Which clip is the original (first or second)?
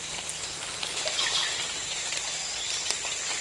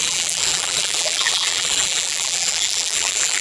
first